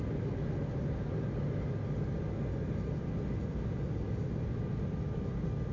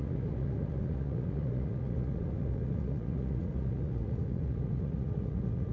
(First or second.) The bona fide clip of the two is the first